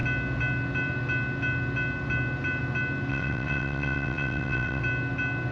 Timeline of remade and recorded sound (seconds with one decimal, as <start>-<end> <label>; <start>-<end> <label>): 0.0-3.1 recorded; 3.1-4.8 remade; 4.8-5.5 recorded

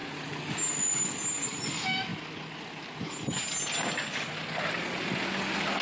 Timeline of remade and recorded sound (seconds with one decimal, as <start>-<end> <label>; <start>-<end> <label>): 0.0-5.8 recorded